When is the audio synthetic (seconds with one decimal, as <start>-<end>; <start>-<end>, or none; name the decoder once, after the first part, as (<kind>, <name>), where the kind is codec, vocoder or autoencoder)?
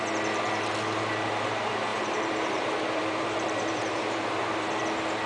1.9-4.8 (vocoder, BigVGAN v2)